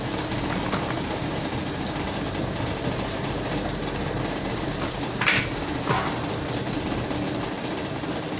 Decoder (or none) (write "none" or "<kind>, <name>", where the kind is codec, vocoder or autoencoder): none